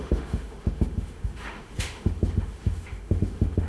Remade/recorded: remade